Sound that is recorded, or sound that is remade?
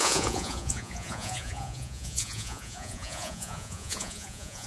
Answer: remade